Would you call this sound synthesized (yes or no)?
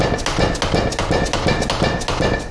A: no